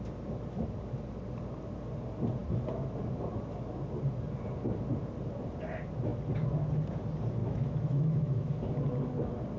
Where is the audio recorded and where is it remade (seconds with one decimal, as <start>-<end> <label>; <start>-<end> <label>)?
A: 0.0-7.4 recorded; 7.4-8.5 remade; 8.5-9.6 recorded